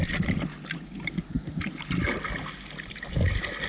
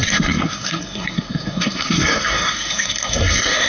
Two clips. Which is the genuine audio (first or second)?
first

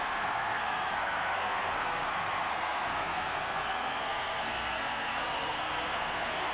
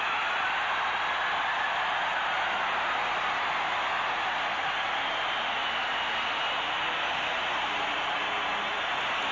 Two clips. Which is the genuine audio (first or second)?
second